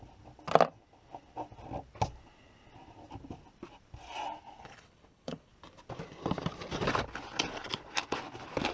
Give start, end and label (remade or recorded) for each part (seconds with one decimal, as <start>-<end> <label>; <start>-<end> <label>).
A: 0.0-4.6 recorded; 4.6-5.5 remade; 5.5-8.7 recorded